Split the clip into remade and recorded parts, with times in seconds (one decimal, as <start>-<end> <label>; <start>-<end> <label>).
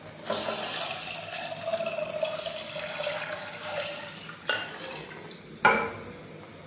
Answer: 0.0-6.7 recorded